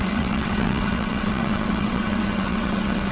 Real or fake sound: fake